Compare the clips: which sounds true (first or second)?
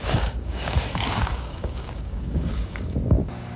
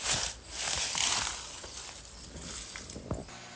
second